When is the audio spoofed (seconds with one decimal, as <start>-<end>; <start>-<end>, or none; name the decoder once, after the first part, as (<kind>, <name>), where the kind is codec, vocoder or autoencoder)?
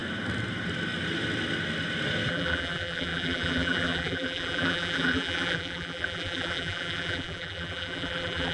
2.3-8.5 (vocoder, BigVGAN v2)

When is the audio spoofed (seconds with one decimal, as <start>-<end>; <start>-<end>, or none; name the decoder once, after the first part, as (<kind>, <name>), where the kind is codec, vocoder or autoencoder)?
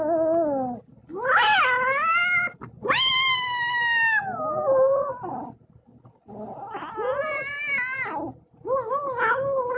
none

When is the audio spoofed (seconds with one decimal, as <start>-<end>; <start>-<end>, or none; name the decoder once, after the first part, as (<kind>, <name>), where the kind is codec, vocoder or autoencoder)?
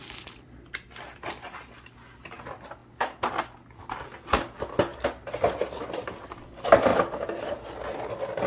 4.9-5.9 (vocoder, BigVGAN v2)